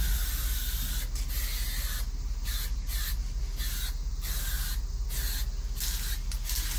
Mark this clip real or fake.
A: real